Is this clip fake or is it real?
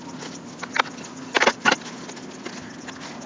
real